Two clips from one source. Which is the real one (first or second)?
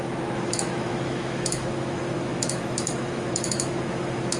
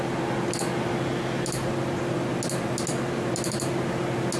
second